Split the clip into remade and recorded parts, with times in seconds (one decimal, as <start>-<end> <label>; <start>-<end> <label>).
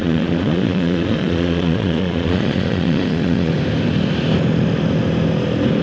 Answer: 0.0-3.5 remade; 3.5-5.8 recorded